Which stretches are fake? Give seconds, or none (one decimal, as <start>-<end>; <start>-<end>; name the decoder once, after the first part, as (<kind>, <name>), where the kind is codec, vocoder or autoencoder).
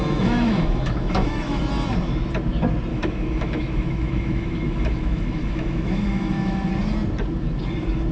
0.0-1.6 (autoencoder, DAC-VAE); 2.9-6.7